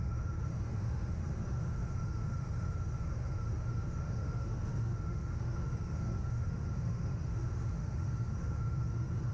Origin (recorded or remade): remade